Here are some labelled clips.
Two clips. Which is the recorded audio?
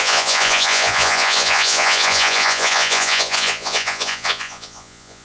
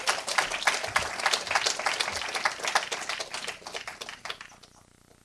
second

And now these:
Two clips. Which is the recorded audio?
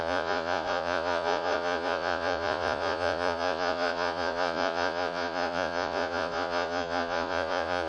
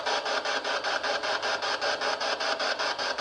second